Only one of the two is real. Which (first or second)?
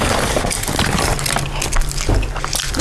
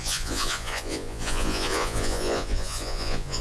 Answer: first